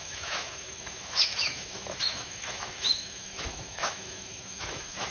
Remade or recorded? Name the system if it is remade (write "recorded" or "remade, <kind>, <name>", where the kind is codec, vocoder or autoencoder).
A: remade, autoencoder, DAC-VAE